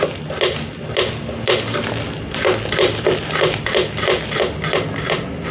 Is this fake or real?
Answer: real